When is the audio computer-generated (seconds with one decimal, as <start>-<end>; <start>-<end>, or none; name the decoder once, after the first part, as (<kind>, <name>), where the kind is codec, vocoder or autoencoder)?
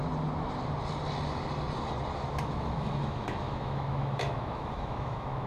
2.4-5.5 (autoencoder, DAC-VAE)